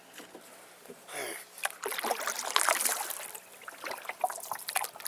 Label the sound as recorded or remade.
remade